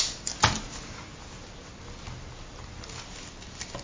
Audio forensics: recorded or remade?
recorded